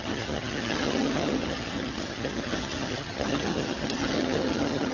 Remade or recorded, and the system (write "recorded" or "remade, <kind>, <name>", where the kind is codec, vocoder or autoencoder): remade, vocoder, HiFi-GAN